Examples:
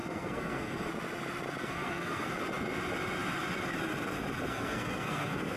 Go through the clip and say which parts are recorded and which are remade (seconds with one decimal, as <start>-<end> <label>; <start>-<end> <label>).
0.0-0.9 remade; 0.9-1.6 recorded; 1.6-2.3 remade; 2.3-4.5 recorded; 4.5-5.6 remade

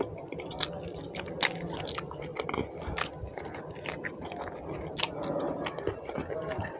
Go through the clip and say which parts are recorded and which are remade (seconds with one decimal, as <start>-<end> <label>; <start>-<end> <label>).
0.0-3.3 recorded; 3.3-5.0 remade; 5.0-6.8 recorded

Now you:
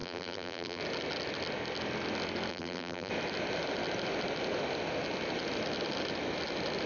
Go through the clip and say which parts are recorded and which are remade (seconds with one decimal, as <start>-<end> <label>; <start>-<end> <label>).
0.0-0.8 remade; 0.8-2.5 recorded; 2.5-3.1 remade; 3.1-6.9 recorded

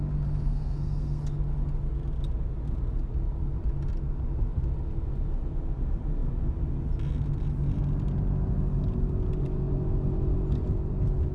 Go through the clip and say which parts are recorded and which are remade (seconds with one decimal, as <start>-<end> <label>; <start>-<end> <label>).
0.0-0.5 recorded; 0.5-1.2 remade; 1.2-11.3 recorded

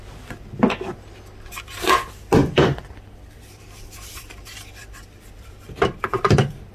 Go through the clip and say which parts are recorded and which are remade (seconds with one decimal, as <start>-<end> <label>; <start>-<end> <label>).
0.0-2.4 recorded; 2.4-6.7 remade